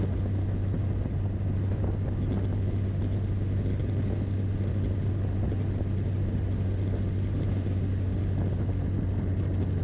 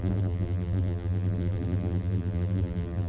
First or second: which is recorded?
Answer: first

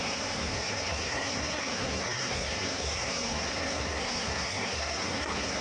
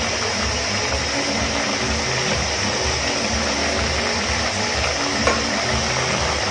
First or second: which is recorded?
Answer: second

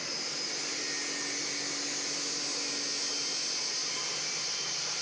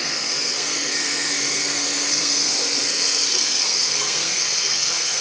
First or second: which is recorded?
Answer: first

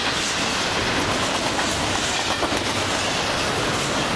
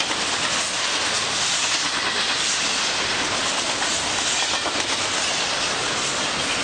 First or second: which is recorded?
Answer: second